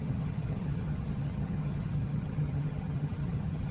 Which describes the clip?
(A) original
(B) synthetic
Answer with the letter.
B